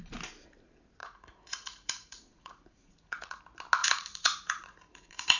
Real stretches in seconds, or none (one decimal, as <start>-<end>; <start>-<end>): 0.0-1.0; 3.4-3.8